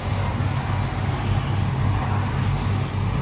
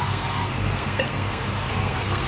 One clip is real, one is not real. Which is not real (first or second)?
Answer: second